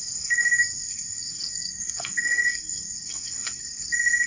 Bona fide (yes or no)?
no